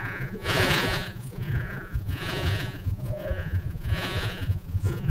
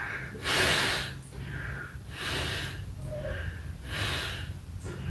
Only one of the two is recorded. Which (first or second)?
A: second